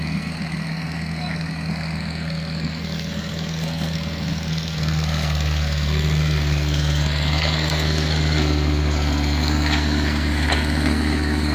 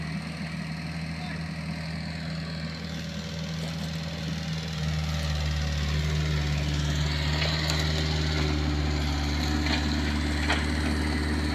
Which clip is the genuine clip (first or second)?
second